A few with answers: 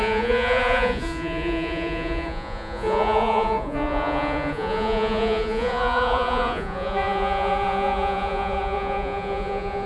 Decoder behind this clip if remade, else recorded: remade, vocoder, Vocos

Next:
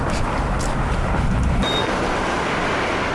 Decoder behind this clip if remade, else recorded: recorded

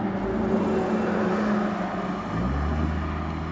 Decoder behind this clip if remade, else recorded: recorded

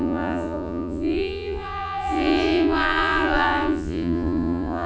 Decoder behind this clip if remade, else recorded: remade, vocoder, Vocos